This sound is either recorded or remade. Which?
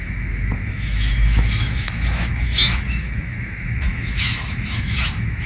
remade